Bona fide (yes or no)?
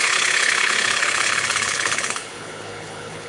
no